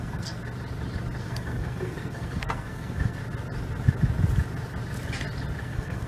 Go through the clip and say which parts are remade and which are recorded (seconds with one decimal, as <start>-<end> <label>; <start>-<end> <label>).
0.0-0.4 remade; 0.4-1.2 recorded; 1.2-3.2 remade; 3.2-5.6 recorded; 5.6-6.1 remade